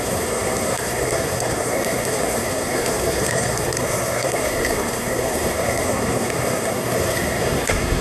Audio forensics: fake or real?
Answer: fake